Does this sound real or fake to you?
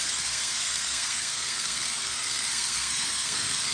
fake